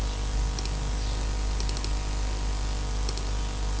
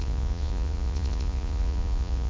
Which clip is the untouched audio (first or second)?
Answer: first